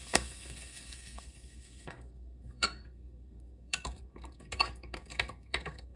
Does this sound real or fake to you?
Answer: fake